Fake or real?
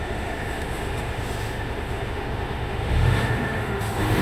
fake